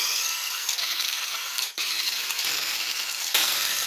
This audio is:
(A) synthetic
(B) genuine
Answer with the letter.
A